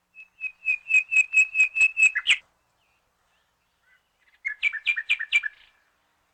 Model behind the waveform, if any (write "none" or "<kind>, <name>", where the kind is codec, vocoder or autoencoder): none